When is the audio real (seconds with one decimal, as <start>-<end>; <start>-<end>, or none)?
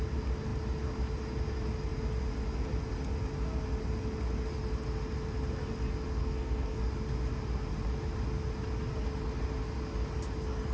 0.0-6.2; 6.8-10.7